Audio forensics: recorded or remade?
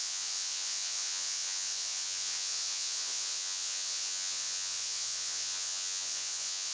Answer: remade